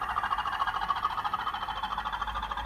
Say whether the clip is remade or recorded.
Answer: recorded